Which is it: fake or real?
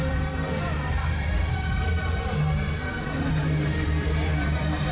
fake